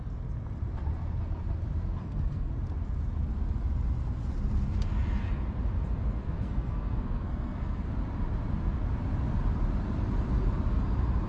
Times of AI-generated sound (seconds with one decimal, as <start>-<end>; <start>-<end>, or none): 2.0-2.5; 6.2-7.9